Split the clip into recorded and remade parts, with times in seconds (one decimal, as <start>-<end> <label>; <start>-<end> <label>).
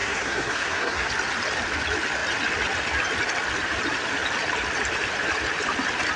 0.0-1.1 remade; 1.1-6.2 recorded